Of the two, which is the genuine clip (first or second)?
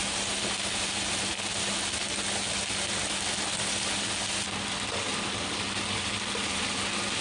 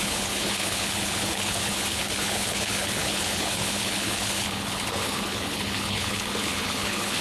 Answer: first